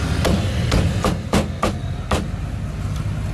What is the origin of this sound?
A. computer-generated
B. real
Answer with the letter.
B